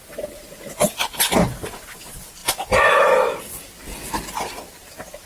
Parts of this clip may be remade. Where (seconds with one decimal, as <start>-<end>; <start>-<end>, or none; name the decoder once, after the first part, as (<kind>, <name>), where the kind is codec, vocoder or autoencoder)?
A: none